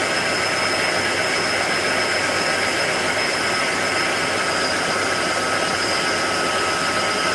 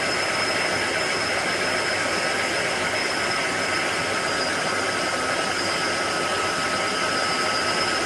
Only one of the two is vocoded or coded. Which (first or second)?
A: second